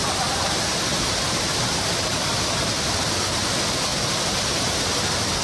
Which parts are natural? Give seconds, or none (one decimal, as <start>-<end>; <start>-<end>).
0.0-0.9; 2.8-3.9; 4.7-5.4